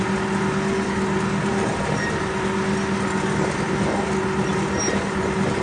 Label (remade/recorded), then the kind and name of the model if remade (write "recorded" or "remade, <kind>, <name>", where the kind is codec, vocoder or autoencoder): recorded